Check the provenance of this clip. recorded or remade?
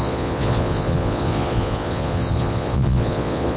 remade